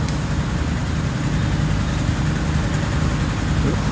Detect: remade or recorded recorded